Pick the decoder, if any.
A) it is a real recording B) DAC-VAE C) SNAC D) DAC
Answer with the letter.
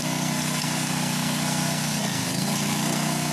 C